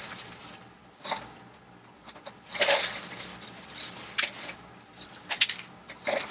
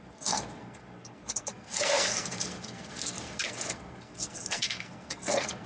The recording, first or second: first